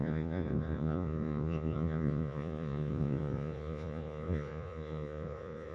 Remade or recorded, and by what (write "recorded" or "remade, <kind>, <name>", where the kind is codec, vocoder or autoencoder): remade, vocoder, Vocos